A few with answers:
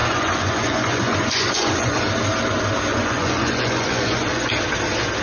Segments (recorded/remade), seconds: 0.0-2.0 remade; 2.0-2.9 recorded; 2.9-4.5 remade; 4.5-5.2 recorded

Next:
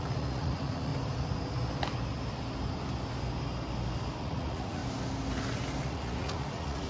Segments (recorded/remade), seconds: 0.0-0.9 remade; 0.9-4.2 recorded; 4.2-4.8 remade; 4.8-5.8 recorded; 5.8-6.9 remade

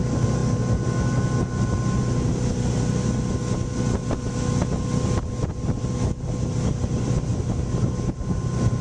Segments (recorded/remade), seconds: 0.0-8.8 recorded

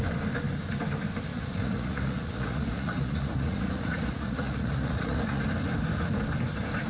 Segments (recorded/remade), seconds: 0.0-1.3 recorded; 1.3-5.4 remade; 5.4-6.9 recorded

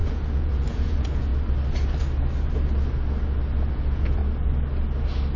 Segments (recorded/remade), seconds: 0.0-1.3 remade; 1.3-3.7 recorded; 3.7-4.2 remade; 4.2-5.4 recorded

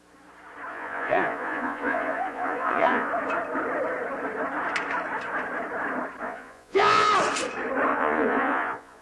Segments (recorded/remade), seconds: 0.0-0.7 recorded; 0.7-3.1 remade; 3.1-6.2 recorded; 6.2-7.1 remade; 7.1-7.9 recorded; 7.9-9.0 remade

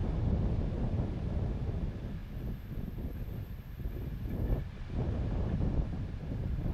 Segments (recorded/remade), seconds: 0.0-6.7 recorded

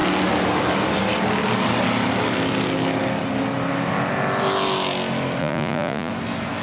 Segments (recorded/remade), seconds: 0.0-5.4 recorded; 5.4-6.1 remade; 6.1-6.6 recorded